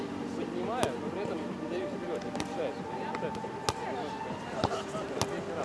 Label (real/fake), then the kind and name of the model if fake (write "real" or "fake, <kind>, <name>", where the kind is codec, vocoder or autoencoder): real